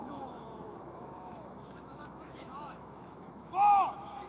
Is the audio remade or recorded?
remade